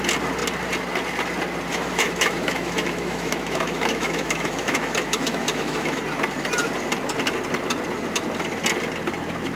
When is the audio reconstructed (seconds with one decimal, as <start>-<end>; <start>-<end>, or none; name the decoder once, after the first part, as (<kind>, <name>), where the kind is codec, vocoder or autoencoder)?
1.7-6.0 (autoencoder, DAC-VAE)